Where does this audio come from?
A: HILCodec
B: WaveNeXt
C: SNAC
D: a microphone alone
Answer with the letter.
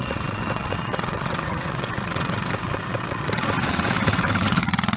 B